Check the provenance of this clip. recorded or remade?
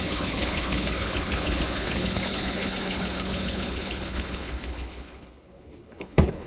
remade